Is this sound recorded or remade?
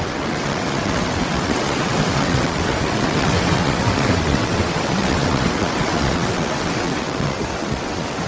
remade